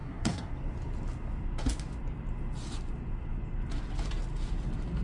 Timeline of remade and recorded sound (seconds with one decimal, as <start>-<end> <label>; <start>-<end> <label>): 0.0-0.5 remade; 0.5-5.0 recorded